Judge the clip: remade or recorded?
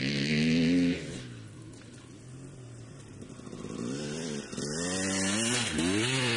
recorded